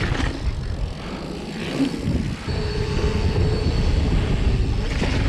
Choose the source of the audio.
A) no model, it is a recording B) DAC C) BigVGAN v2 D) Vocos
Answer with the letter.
A